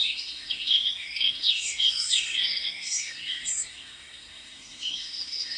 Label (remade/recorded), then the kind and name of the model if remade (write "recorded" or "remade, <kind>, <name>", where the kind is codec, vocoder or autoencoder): remade, codec, SNAC